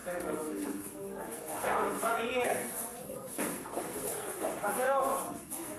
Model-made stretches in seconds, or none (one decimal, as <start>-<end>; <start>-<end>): 0.0-5.8